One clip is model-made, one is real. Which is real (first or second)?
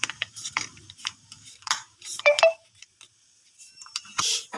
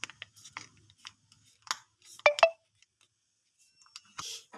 second